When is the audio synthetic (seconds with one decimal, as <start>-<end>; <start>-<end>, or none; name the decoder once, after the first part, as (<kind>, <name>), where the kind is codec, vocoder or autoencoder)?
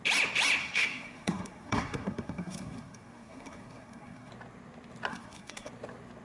0.6-4.3 (codec, SNAC); 5.1-5.7